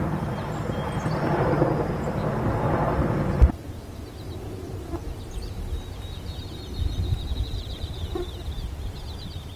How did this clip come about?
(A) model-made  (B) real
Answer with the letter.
A